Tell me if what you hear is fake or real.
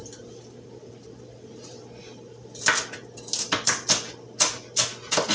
real